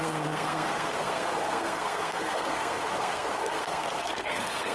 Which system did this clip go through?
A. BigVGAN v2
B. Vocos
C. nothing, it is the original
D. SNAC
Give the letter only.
D